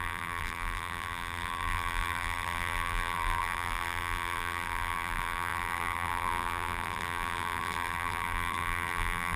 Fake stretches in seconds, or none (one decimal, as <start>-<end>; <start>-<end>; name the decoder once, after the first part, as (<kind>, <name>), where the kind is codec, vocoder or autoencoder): 0.0-9.4 (vocoder, BigVGAN v2)